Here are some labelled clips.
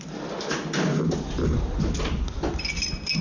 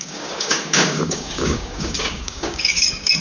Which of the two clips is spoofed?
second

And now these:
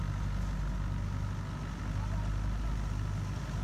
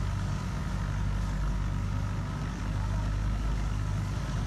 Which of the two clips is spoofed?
second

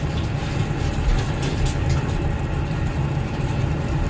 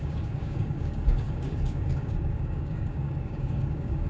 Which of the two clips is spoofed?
second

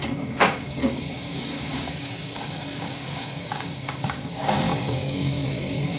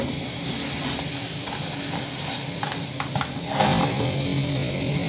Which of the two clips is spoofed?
first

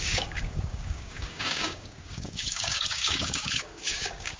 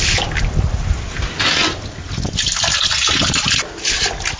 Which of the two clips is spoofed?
first